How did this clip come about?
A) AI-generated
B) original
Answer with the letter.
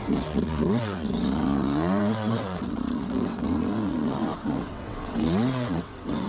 A